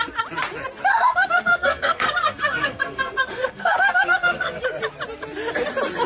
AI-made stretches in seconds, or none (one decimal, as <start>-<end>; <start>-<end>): 0.9-4.6